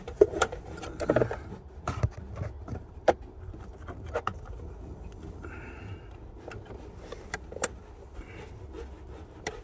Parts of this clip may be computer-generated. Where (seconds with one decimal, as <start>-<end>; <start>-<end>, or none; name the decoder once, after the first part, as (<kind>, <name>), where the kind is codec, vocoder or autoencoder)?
none